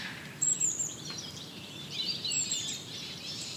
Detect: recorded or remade remade